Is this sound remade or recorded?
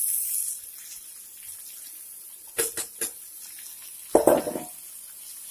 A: recorded